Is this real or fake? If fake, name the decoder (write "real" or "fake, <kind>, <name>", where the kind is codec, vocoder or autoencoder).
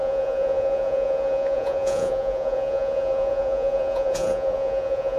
fake, vocoder, Vocos